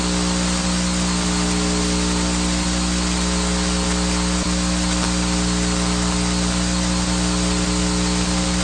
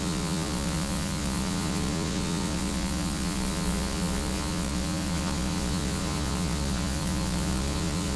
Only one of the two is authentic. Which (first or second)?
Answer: first